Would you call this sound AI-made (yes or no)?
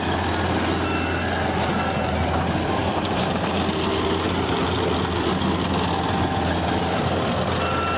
no